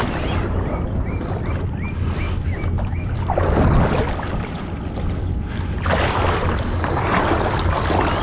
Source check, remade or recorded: recorded